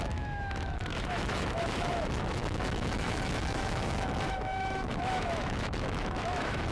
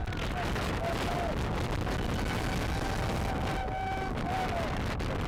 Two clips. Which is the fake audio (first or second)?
first